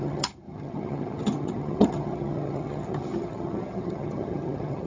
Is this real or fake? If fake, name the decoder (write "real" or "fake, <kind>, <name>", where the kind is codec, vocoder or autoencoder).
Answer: fake, vocoder, HiFi-GAN